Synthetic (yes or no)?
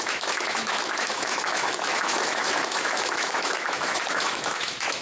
yes